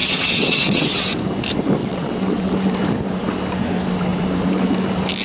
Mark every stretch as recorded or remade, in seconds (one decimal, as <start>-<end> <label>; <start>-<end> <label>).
0.0-1.2 remade; 1.2-1.8 recorded; 1.8-2.5 remade; 2.5-5.2 recorded